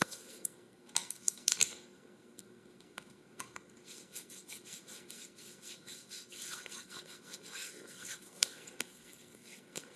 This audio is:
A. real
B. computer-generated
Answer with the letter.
B